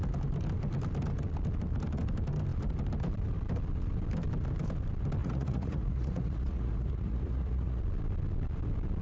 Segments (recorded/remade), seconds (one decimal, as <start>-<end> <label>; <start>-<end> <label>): 0.0-5.2 recorded; 5.2-7.8 remade; 7.8-9.0 recorded